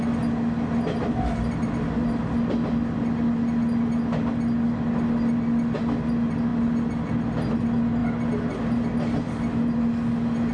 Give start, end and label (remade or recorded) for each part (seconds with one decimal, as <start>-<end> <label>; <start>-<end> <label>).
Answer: 0.0-10.5 recorded